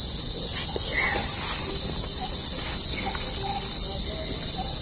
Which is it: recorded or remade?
recorded